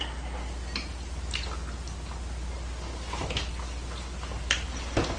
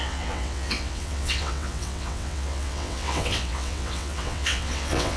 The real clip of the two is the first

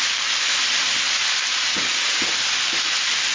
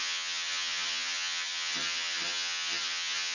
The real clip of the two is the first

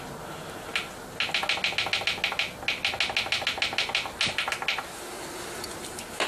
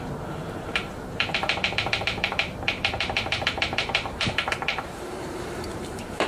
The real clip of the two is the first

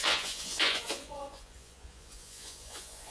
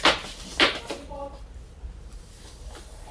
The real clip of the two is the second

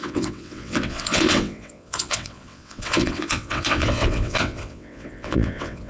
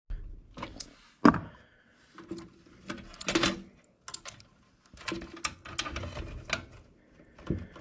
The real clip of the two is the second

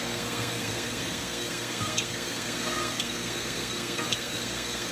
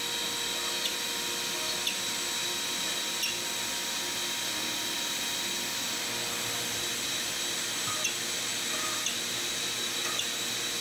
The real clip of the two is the second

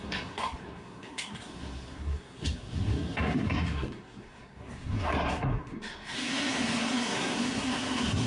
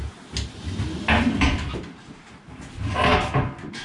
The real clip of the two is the second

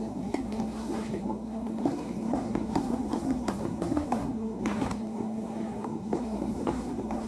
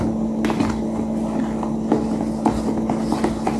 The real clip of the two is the second